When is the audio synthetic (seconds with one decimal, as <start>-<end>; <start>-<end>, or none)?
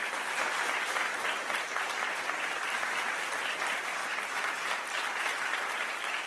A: 0.0-4.0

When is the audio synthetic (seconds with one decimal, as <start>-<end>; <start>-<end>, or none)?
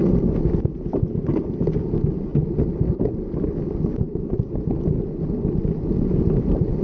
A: none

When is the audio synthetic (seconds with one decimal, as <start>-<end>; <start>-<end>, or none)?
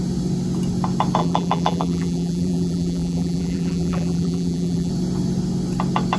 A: 1.2-4.9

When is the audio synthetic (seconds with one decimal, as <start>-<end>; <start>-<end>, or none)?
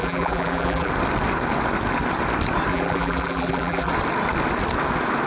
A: 0.0-0.9; 2.7-3.9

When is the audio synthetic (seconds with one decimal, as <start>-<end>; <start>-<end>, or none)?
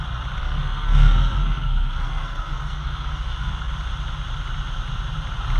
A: 0.4-3.7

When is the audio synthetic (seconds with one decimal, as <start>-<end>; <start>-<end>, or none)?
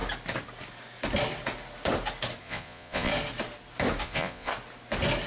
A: 2.4-3.1; 4.0-4.5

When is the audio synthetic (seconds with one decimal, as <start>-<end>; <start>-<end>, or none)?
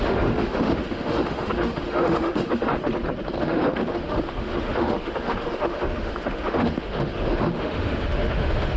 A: 0.0-2.7; 3.4-8.8